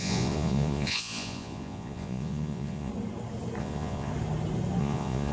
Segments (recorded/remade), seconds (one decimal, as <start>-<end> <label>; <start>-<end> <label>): 0.0-2.9 remade; 2.9-3.6 recorded; 3.6-4.1 remade; 4.1-4.8 recorded; 4.8-5.3 remade